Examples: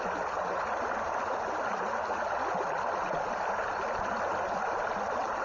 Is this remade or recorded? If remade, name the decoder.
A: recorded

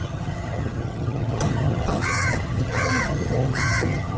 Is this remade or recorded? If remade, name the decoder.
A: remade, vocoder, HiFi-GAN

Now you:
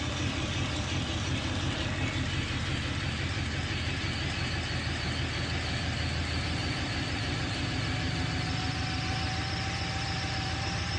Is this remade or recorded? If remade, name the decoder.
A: recorded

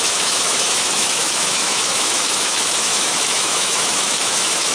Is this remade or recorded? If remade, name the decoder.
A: remade, autoencoder, DAC-VAE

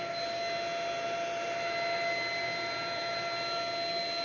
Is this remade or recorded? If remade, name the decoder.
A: recorded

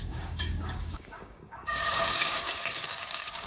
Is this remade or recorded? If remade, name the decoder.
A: remade, codec, DAC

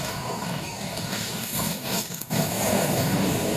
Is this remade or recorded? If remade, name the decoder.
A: remade, codec, DAC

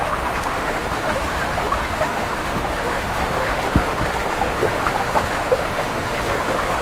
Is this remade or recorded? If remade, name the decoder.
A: remade, autoencoder, DAC-VAE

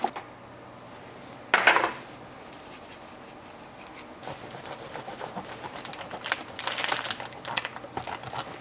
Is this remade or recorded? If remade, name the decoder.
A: recorded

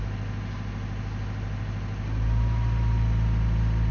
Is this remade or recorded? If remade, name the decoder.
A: recorded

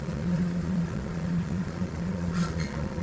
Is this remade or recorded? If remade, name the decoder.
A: remade, vocoder, Vocos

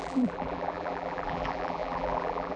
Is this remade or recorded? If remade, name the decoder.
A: remade, vocoder, BigVGAN v2